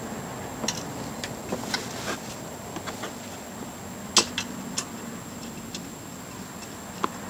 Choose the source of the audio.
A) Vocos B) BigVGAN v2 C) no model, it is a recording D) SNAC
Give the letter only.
C